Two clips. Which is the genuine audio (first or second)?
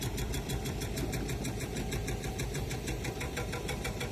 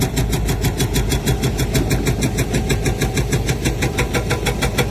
second